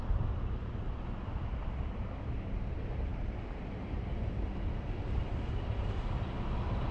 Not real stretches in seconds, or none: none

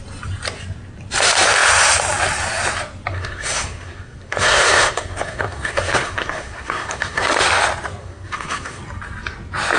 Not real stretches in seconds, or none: 3.1-7.3 (codec, SNAC); 8.0-8.8

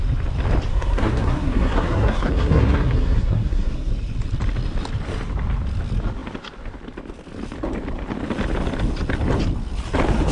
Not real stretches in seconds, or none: 0.7-3.9 (codec, SNAC)

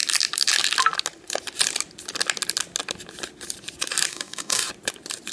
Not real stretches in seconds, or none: 4.1-4.7 (codec, DAC)

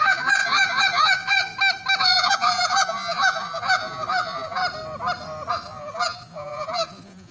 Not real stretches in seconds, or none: 0.0-1.5 (vocoder, Vocos); 2.0-4.6; 5.5-7.3